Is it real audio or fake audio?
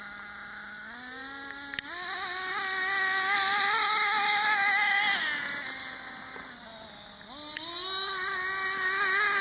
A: real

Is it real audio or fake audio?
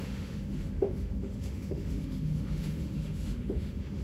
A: fake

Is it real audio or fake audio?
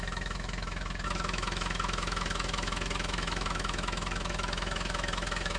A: fake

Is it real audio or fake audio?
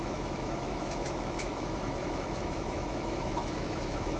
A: fake